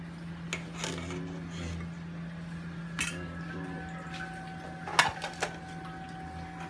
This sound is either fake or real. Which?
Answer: real